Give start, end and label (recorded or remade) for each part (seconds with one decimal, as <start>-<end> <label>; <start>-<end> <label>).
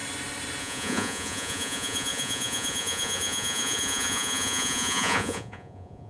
0.0-0.6 recorded; 0.6-6.1 remade